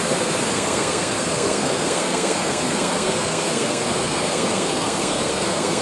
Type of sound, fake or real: fake